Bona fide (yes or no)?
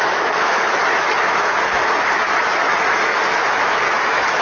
no